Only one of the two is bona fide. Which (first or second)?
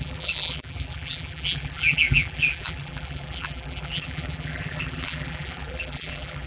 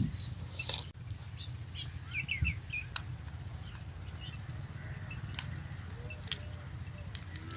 second